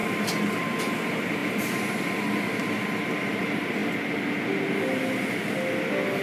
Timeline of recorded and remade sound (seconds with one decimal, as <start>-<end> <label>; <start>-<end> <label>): 0.0-6.2 recorded